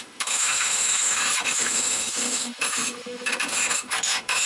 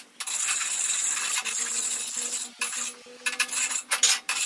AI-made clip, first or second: first